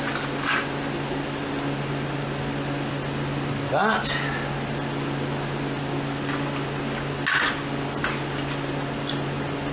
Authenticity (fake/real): real